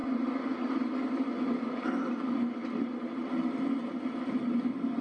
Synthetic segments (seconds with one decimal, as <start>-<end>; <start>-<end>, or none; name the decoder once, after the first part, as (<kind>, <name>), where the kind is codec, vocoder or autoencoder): none